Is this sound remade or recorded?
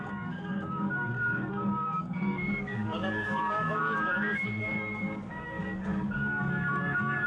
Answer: remade